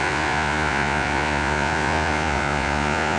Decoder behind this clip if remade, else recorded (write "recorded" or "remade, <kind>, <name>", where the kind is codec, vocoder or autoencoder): remade, vocoder, Vocos